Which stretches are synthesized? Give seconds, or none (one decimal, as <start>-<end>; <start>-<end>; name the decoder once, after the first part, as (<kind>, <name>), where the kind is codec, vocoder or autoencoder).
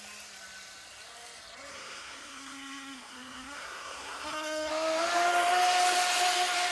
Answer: 1.7-4.7 (codec, SNAC)